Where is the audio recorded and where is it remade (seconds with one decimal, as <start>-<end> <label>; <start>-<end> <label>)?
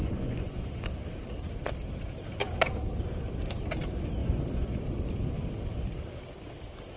0.0-0.8 remade; 0.8-4.2 recorded; 4.2-4.8 remade; 4.8-7.0 recorded